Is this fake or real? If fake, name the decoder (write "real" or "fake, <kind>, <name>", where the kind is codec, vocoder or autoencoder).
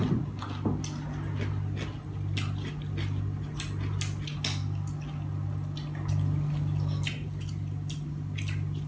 real